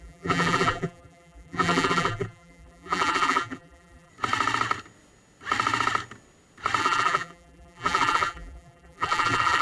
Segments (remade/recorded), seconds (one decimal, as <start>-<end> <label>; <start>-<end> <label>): 0.0-4.1 remade; 4.1-6.8 recorded; 6.8-9.6 remade